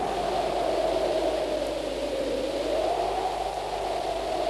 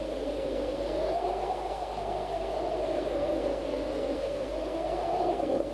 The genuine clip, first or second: first